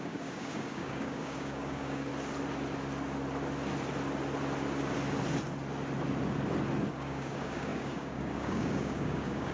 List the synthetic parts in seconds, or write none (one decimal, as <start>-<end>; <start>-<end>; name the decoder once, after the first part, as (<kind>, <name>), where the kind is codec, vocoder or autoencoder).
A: 0.0-2.1 (codec, DAC); 6.9-9.5